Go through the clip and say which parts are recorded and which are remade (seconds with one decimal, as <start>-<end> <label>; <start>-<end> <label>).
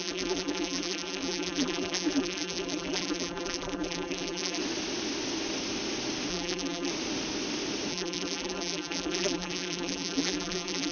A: 0.0-4.6 remade; 4.6-6.3 recorded; 6.3-6.9 remade; 6.9-7.9 recorded; 7.9-10.9 remade